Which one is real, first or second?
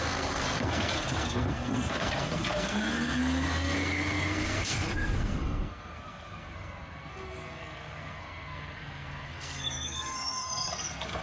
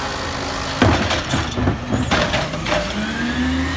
second